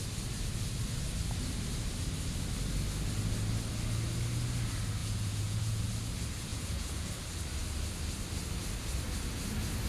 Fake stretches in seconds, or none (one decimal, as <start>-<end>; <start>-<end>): 5.0-5.8; 6.5-7.1